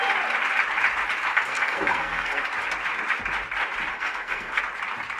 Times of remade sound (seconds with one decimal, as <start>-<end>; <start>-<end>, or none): 1.3-2.4; 3.9-4.6